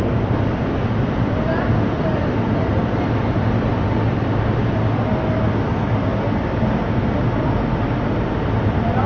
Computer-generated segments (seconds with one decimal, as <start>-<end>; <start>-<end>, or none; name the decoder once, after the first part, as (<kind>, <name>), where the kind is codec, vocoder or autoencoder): 2.1-2.8 (vocoder, BigVGAN v2)